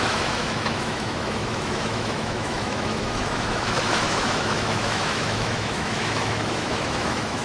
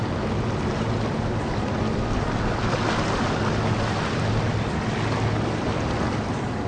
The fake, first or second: first